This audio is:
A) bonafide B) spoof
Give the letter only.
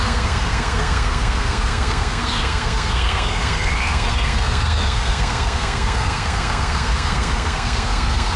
B